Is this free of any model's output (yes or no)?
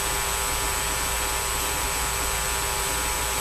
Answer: yes